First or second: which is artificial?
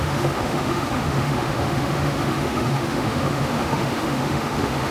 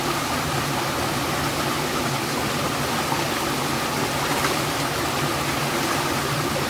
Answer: first